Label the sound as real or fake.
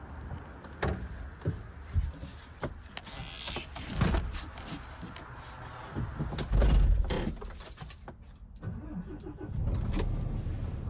real